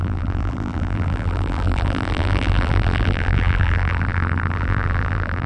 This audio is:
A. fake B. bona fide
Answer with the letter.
A